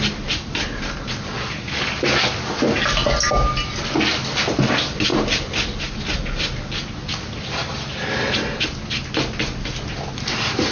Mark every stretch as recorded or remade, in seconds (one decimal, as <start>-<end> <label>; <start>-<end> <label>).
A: 0.0-10.7 recorded